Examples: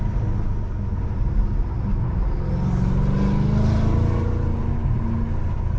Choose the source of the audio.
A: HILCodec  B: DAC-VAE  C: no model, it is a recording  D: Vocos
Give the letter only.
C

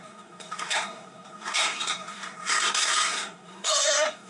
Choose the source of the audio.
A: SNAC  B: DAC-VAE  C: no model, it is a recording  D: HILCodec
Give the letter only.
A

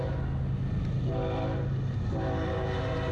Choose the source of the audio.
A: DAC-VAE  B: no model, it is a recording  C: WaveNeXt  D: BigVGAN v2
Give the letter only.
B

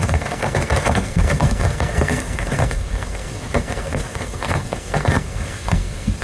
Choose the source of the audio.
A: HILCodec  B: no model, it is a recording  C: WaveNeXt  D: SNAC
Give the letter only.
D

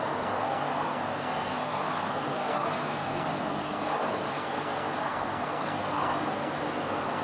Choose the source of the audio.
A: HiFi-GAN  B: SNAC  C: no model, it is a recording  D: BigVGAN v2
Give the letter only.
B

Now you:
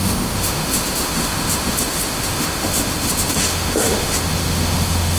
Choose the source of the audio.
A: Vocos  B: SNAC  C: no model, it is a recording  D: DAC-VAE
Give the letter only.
D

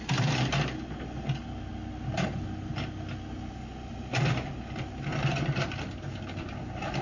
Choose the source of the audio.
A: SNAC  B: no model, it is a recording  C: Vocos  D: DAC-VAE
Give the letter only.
B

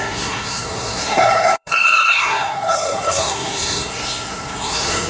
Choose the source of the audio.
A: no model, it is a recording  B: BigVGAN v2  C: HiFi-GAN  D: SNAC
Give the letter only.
D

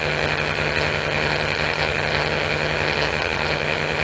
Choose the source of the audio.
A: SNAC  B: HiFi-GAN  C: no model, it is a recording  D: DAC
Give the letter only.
B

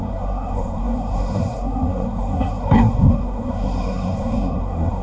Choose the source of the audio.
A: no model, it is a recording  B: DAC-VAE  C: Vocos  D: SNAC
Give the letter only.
D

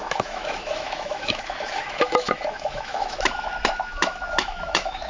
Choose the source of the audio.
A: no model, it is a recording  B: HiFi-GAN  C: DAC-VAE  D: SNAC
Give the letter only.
C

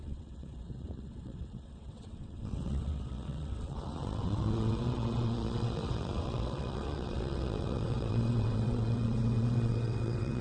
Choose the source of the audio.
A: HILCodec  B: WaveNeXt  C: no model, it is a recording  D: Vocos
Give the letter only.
B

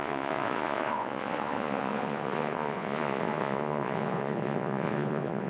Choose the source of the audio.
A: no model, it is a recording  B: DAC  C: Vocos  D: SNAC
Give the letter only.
C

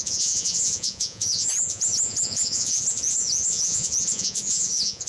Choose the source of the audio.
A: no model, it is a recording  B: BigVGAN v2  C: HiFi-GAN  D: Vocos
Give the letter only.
D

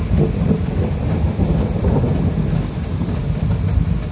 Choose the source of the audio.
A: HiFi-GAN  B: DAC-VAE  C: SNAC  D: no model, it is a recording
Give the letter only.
D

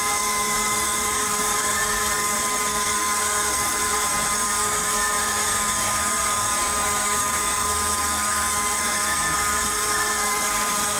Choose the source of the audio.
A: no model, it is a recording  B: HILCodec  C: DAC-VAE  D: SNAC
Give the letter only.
D